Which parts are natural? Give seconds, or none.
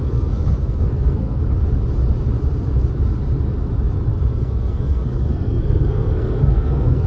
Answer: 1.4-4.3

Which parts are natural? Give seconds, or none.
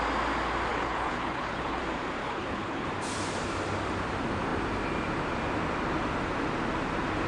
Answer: 0.0-0.7; 1.8-2.2; 2.9-7.3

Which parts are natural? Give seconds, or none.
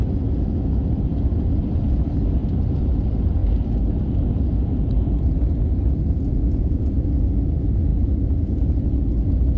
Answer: 0.0-6.3; 6.9-9.6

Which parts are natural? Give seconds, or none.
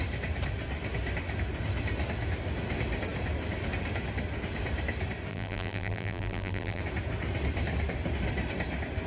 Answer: 0.0-5.3; 6.8-9.1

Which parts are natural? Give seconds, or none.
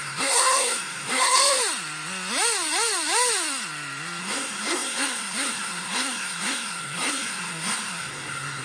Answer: 1.6-4.2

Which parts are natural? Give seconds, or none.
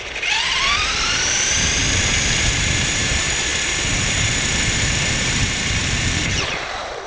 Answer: 1.8-2.4; 5.8-6.3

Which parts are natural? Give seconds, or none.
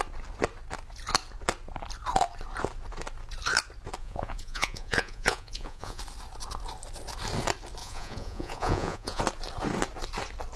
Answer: 0.0-4.0; 6.0-7.8; 9.2-10.6